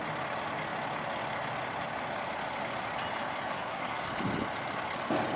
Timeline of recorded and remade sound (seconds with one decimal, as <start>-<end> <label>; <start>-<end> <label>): 0.0-3.5 recorded; 3.5-4.1 remade; 4.1-5.4 recorded